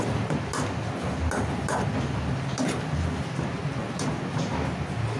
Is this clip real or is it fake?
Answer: real